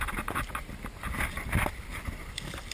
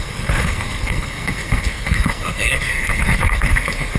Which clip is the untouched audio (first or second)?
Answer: first